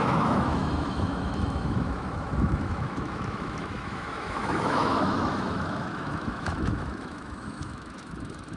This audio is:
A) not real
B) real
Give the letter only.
A